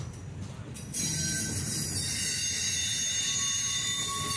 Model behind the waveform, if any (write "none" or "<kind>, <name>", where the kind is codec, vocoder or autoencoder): none